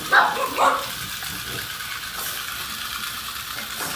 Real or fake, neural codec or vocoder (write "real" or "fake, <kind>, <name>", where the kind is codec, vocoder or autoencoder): real